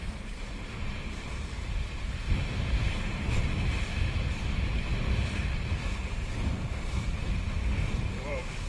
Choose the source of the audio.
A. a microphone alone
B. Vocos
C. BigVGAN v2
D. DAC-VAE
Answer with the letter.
C